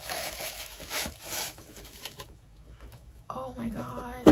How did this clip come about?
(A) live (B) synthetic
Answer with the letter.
B